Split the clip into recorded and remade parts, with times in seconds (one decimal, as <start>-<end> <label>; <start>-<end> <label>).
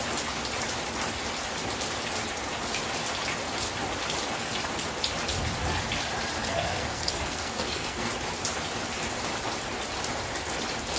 0.0-6.4 recorded; 6.4-8.1 remade; 8.1-11.0 recorded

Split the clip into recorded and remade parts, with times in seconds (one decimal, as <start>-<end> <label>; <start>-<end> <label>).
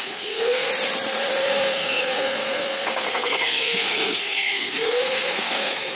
0.0-0.7 remade; 0.7-1.4 recorded; 1.4-6.0 remade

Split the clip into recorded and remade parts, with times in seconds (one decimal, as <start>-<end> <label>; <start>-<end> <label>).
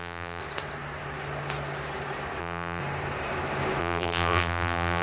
0.0-0.4 remade; 0.4-2.4 recorded; 2.4-2.8 remade; 2.8-3.8 recorded; 3.8-5.0 remade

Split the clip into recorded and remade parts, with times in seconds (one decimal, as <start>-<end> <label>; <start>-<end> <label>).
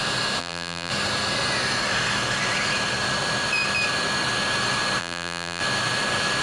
0.0-0.4 recorded; 0.4-0.9 remade; 0.9-5.0 recorded; 5.0-5.6 remade; 5.6-6.4 recorded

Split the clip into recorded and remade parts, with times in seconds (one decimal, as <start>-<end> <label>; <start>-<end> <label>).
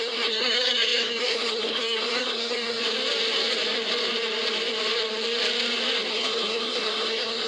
0.0-2.8 remade; 2.8-6.1 recorded; 6.1-7.5 remade